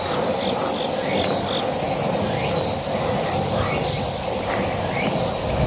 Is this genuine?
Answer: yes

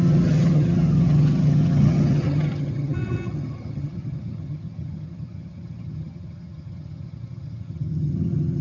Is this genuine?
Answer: no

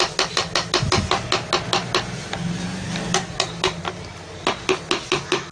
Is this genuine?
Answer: yes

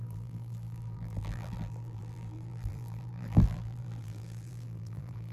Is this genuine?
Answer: no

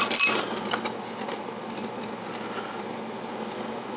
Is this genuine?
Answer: no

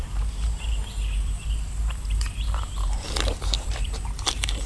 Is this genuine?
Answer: no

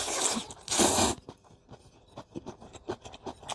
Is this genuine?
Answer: yes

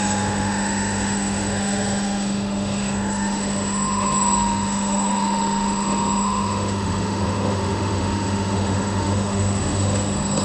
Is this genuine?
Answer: no